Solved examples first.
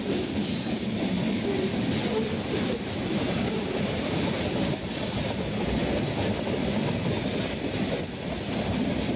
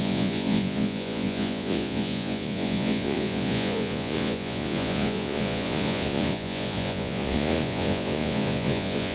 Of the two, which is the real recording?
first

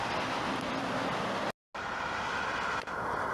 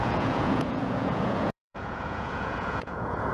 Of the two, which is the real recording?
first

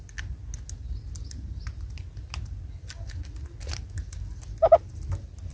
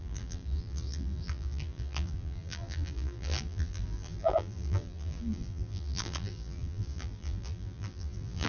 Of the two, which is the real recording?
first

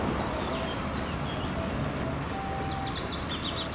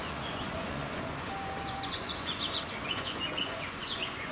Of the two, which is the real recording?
first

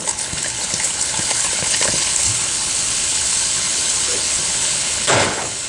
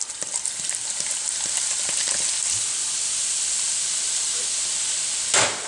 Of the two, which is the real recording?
second